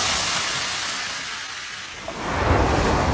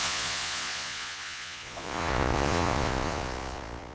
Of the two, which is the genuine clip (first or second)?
first